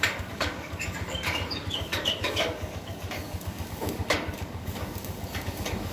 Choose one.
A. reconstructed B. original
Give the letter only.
A